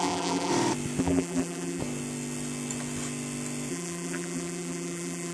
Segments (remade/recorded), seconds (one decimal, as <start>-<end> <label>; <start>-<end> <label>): 0.0-0.5 remade; 0.5-1.0 recorded; 1.0-1.8 remade; 1.8-3.7 recorded; 3.7-5.3 remade